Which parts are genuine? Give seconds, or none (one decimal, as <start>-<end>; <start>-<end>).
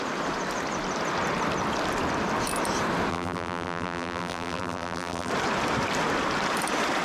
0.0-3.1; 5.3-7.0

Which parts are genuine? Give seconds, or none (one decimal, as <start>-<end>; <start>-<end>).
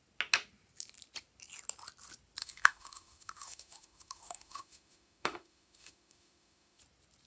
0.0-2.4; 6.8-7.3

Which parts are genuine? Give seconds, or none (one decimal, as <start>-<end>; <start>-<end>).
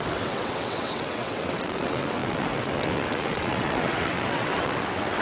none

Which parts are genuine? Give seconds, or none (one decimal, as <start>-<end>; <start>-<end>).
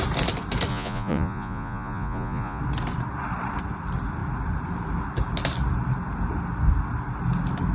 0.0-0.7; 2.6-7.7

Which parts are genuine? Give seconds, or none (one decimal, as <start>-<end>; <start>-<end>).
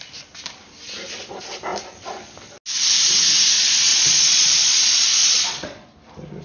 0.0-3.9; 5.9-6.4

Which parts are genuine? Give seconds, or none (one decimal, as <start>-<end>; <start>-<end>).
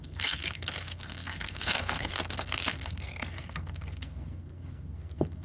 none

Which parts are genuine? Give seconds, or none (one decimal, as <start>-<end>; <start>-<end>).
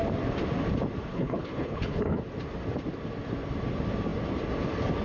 0.0-1.1; 2.2-5.0